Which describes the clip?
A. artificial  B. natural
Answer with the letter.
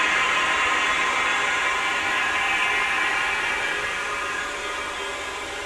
B